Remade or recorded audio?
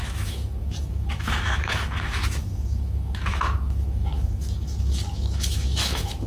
remade